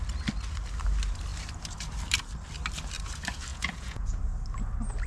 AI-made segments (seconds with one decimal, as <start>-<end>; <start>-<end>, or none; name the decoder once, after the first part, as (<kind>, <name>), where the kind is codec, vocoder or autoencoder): 3.5-4.2 (vocoder, Vocos)